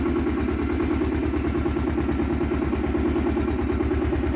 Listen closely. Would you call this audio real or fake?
real